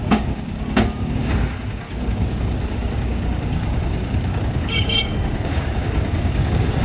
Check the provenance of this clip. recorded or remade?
remade